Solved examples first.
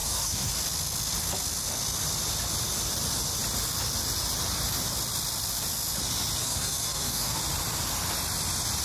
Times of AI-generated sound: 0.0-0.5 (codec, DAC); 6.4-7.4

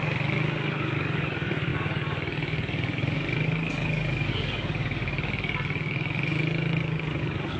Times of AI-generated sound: 0.0-7.6 (codec, DAC)

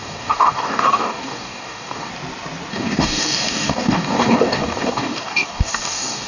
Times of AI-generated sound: 0.0-2.1 (codec, DAC); 2.7-6.3

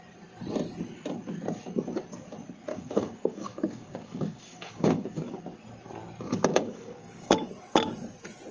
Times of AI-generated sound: 2.7-5.4 (codec, DAC); 6.5-7.5

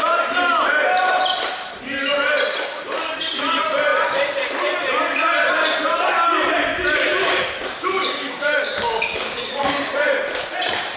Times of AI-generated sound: 7.2-9.7 (codec, DAC)